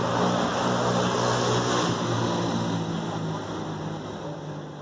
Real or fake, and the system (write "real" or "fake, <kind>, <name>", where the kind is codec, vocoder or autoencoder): real